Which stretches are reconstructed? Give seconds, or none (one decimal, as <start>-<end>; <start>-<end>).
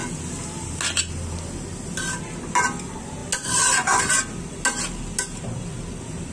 none